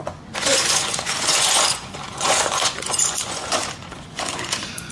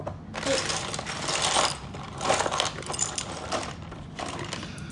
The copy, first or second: first